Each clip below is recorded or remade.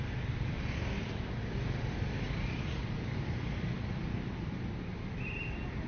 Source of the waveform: remade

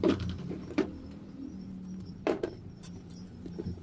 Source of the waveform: remade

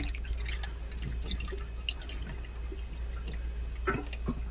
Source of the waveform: recorded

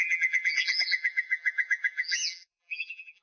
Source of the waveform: remade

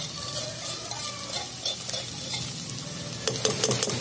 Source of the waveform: recorded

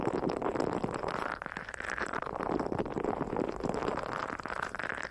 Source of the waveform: remade